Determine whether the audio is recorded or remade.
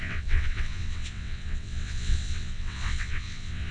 remade